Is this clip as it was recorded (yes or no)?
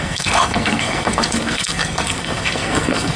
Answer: no